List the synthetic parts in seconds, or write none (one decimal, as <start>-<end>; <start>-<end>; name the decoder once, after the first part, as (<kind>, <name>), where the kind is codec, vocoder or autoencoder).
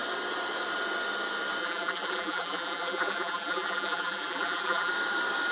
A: 1.6-4.9 (vocoder, BigVGAN v2)